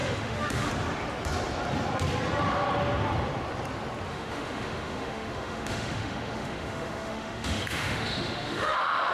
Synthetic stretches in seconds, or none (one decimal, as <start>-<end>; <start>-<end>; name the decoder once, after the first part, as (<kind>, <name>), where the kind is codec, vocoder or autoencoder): 0.0-0.7 (autoencoder, DAC-VAE); 4.1-9.1